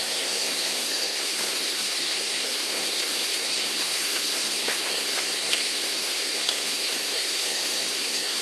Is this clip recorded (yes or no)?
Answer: no